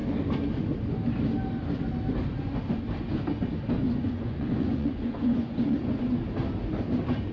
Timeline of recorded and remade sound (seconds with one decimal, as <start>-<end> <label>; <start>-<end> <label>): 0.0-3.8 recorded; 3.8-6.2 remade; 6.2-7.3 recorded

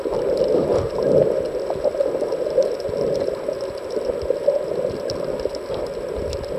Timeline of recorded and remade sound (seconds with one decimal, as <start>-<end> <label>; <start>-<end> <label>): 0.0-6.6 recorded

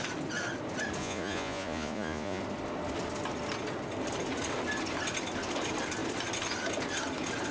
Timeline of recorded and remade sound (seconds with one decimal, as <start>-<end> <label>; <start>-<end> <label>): 0.0-1.0 recorded; 1.0-2.4 remade; 2.4-7.5 recorded

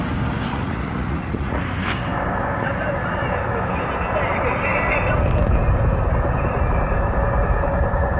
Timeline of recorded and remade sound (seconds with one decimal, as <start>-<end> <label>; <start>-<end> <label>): 0.0-0.5 recorded; 0.5-1.6 remade; 1.6-8.2 recorded